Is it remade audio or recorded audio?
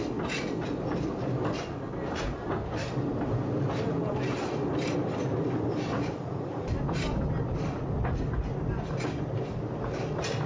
recorded